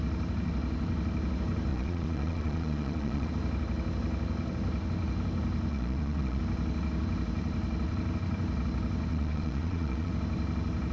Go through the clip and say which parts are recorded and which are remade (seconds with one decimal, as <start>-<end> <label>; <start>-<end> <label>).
0.0-1.7 recorded; 1.7-3.3 remade; 3.3-5.7 recorded; 5.7-6.4 remade; 6.4-9.1 recorded; 9.1-10.1 remade; 10.1-10.9 recorded